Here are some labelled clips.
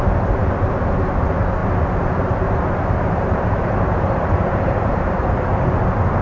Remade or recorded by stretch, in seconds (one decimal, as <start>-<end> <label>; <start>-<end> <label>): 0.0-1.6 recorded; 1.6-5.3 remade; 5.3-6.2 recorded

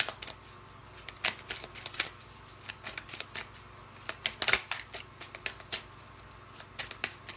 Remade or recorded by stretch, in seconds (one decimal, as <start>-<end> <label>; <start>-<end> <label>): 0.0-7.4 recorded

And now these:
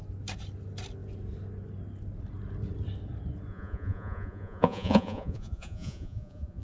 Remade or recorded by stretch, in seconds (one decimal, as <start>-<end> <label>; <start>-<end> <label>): 0.0-3.5 recorded; 3.5-6.6 remade

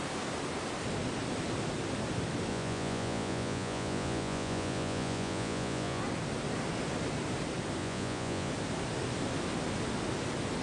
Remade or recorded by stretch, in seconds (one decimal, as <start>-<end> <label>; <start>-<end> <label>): 0.0-2.5 recorded; 2.5-6.0 remade; 6.0-7.8 recorded; 7.8-8.5 remade; 8.5-10.6 recorded

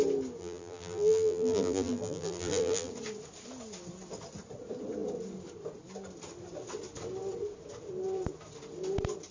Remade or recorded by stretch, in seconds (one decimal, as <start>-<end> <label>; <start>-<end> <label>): 0.0-0.4 recorded; 0.4-2.9 remade; 2.9-9.3 recorded